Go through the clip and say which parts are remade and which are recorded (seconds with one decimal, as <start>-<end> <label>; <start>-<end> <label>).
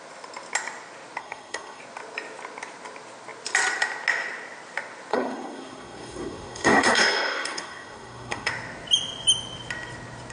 0.0-1.2 recorded; 1.2-1.8 remade; 1.8-5.1 recorded; 5.1-8.5 remade; 8.5-10.3 recorded